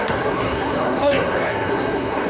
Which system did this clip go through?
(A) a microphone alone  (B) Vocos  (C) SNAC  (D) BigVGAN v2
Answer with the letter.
C